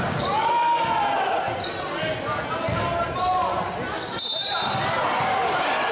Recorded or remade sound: recorded